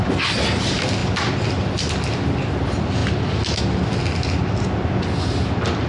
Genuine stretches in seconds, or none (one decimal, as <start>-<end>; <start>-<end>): 0.0-5.9